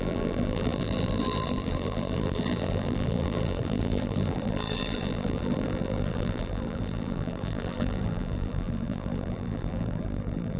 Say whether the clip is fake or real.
fake